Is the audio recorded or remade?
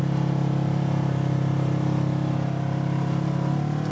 recorded